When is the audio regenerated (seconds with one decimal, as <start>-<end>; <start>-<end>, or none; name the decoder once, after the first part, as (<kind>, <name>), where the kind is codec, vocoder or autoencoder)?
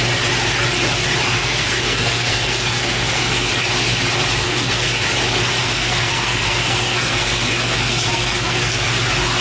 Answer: 1.4-3.5 (codec, SNAC); 4.4-5.0; 5.6-8.9